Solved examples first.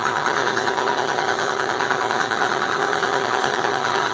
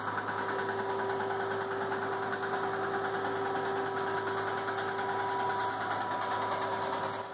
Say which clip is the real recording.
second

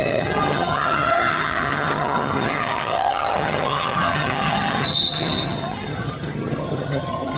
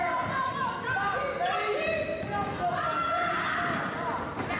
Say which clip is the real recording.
second